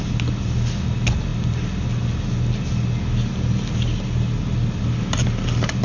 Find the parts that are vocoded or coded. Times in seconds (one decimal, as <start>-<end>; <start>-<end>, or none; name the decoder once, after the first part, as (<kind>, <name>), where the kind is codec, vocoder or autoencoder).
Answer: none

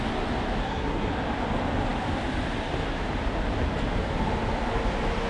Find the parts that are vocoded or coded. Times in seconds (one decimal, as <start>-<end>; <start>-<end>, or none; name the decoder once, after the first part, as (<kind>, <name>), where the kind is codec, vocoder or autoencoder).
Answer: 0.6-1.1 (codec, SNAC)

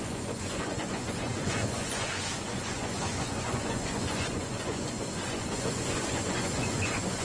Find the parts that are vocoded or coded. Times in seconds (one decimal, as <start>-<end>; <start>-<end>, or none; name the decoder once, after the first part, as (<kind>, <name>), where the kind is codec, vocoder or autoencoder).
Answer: 0.0-7.2 (vocoder, Vocos)

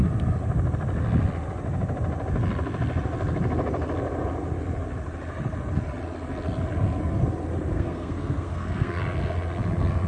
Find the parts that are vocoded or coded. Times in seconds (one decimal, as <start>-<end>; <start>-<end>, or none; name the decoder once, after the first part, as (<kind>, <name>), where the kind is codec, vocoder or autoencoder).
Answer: 7.7-9.0 (codec, SNAC)